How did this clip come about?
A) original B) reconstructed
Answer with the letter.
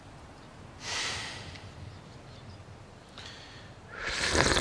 A